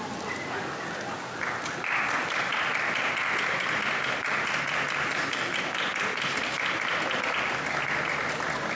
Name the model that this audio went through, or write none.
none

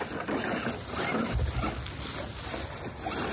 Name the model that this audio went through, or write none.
none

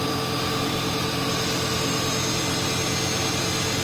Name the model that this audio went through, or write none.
none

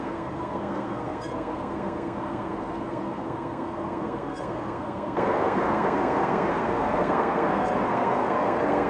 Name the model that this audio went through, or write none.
codec, SNAC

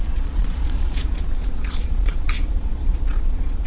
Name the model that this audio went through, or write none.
vocoder, Vocos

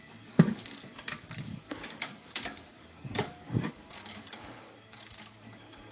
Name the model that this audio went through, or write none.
codec, DAC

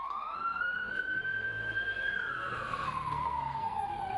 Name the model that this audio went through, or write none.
codec, SNAC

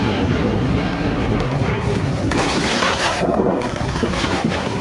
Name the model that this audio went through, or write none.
codec, SNAC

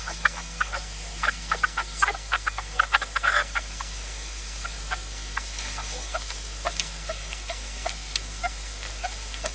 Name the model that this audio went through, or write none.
codec, SNAC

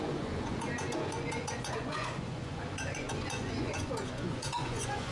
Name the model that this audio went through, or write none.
vocoder, Vocos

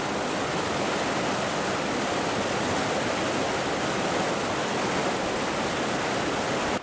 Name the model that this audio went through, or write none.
none